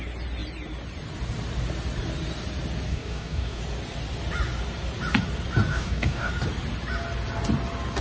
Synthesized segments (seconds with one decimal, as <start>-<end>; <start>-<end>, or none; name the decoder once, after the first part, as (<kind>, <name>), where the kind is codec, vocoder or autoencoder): 2.9-3.6 (codec, DAC); 5.7-6.3